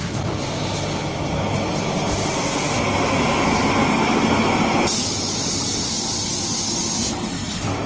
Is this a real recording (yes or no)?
yes